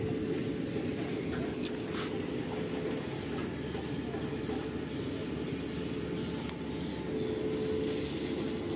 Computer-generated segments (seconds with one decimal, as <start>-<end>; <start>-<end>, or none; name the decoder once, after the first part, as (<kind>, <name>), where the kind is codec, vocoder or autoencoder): none